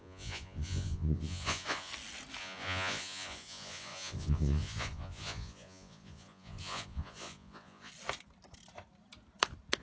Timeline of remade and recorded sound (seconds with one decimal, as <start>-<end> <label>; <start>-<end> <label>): 0.0-1.9 remade; 1.9-2.4 recorded; 2.4-7.9 remade; 7.9-9.8 recorded